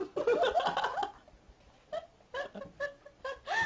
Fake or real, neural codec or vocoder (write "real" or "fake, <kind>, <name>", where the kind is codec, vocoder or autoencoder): real